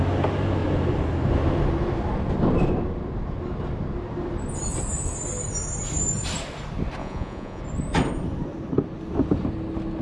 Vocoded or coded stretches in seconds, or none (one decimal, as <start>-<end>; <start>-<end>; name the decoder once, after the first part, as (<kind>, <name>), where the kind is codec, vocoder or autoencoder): 7.0-7.6 (vocoder, Vocos)